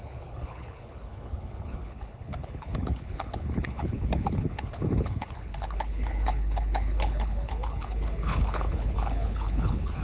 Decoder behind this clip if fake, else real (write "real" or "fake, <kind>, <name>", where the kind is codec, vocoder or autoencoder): fake, codec, HILCodec